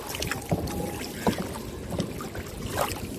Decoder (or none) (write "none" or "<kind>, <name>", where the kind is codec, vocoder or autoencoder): none